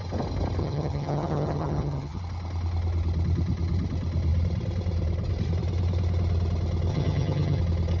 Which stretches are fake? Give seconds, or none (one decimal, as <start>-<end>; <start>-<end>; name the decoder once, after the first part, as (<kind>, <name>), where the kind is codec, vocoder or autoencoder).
0.6-2.2 (vocoder, HiFi-GAN); 6.9-7.6